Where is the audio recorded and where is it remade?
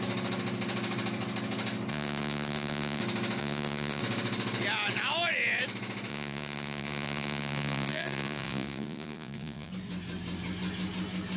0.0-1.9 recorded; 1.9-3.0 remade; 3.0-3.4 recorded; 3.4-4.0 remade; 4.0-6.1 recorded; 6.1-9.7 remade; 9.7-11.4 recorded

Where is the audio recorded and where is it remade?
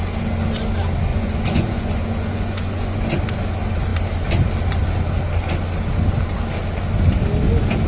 0.0-1.1 recorded; 1.1-3.0 remade; 3.0-7.9 recorded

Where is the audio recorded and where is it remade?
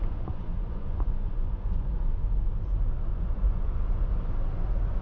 0.0-1.9 remade; 1.9-3.1 recorded; 3.1-4.1 remade; 4.1-5.0 recorded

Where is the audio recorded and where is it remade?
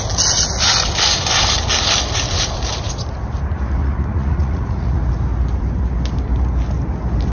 0.0-3.8 recorded; 3.8-5.0 remade; 5.0-7.3 recorded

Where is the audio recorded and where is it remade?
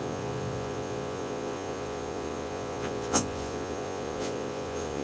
0.0-5.0 remade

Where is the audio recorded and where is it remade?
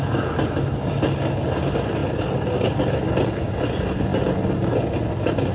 0.0-5.5 recorded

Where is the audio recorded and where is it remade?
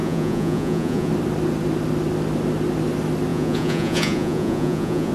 0.0-1.1 remade; 1.1-3.3 recorded; 3.3-5.1 remade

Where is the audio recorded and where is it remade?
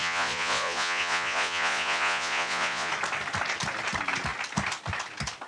0.0-2.9 remade; 2.9-5.5 recorded